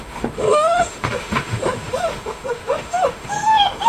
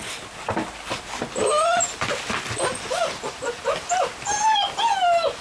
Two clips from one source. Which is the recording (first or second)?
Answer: second